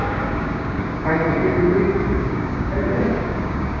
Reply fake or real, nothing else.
fake